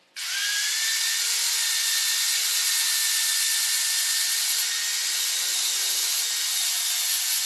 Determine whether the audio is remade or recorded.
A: remade